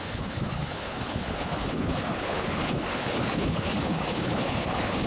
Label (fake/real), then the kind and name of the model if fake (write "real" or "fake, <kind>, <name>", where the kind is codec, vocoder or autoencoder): fake, codec, HILCodec